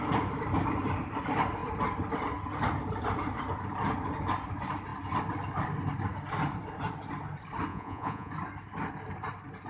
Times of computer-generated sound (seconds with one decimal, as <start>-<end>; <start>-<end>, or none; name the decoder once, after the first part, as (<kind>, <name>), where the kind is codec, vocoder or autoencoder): 7.7-8.3 (vocoder, Vocos)